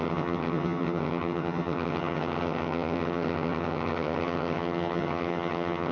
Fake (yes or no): yes